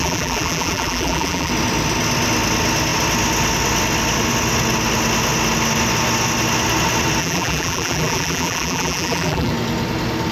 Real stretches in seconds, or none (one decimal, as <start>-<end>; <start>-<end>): 1.5-7.2; 9.5-10.3